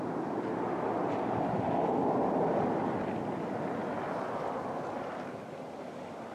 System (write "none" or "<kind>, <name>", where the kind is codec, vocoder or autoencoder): none